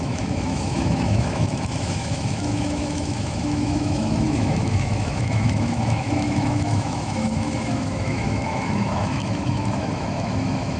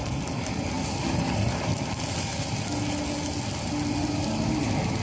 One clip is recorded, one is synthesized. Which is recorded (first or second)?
second